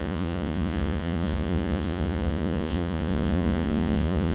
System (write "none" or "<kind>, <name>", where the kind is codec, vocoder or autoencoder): vocoder, Vocos